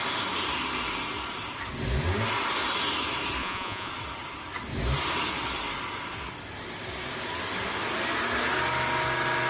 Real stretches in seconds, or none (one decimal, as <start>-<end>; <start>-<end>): 0.0-3.4; 3.9-9.5

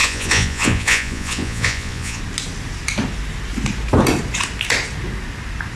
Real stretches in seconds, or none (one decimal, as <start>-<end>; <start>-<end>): 2.2-5.8

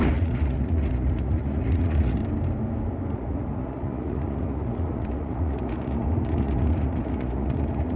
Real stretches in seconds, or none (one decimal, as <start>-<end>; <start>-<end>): 2.2-3.1

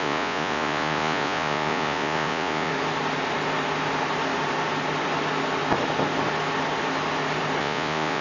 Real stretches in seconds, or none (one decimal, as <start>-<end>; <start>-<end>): 2.7-7.6